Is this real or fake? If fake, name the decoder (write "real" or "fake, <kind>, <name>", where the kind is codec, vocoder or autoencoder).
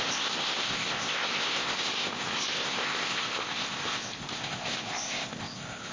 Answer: fake, codec, ZipCodec